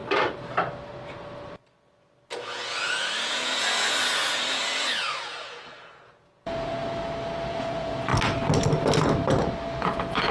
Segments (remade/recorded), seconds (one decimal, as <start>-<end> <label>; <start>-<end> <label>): 0.0-2.4 recorded; 2.4-6.8 remade; 6.8-7.5 recorded; 7.5-8.1 remade; 8.1-9.7 recorded; 9.7-10.3 remade